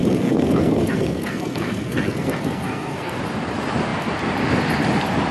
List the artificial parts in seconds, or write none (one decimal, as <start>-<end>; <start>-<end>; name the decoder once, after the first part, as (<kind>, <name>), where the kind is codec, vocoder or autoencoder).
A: 0.0-3.2 (codec, SNAC)